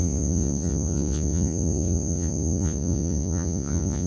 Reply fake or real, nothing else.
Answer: fake